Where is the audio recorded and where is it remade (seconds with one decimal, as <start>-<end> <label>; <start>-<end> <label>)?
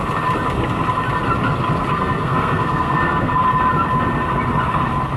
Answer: 0.0-1.9 recorded; 1.9-3.3 remade; 3.3-5.2 recorded